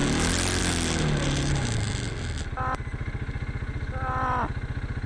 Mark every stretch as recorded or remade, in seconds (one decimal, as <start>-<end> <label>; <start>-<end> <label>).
0.0-5.1 recorded